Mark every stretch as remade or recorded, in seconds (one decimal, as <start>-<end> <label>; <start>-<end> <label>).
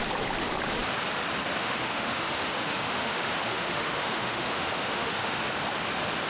0.0-1.6 recorded; 1.6-5.4 remade; 5.4-6.3 recorded